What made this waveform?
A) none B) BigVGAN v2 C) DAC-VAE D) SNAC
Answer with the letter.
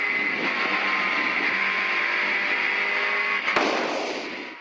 A